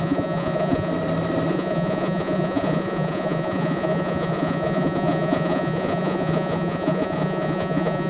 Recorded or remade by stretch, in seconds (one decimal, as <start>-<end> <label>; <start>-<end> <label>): 0.0-0.9 remade; 0.9-1.5 recorded; 1.5-8.1 remade